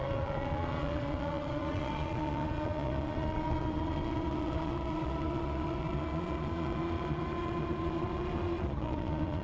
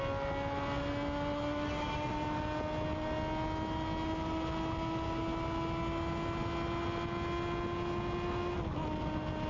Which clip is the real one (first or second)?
second